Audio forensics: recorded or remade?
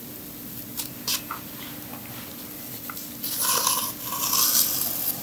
recorded